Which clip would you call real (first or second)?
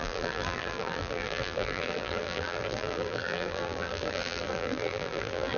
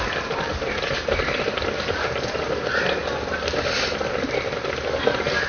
second